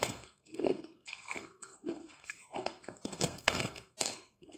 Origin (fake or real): fake